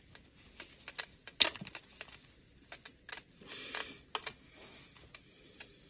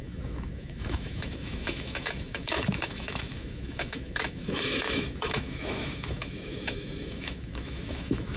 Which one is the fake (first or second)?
second